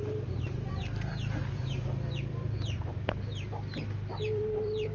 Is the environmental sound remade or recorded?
remade